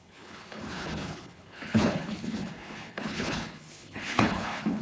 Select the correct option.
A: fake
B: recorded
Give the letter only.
A